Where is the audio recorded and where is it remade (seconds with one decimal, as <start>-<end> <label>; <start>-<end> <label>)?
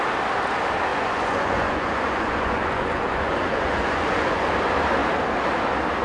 0.0-0.9 recorded; 0.9-4.5 remade; 4.5-6.0 recorded